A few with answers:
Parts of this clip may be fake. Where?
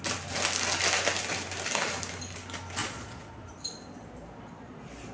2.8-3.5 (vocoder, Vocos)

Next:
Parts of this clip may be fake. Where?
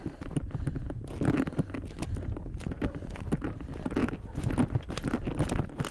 none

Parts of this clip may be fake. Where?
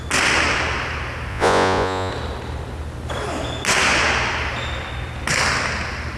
1.3-2.1 (vocoder, Vocos)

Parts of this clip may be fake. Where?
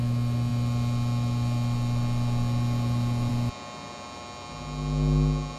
none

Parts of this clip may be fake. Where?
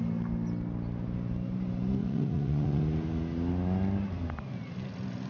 2.0-2.8 (vocoder, Vocos)